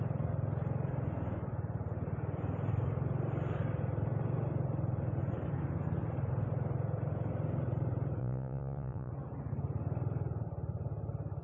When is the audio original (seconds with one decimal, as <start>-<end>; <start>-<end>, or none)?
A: 0.0-8.2; 9.1-11.4